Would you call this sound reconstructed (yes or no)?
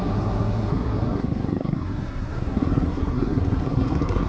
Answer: yes